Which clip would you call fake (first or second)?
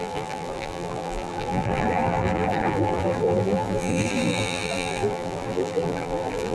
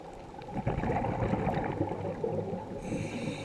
first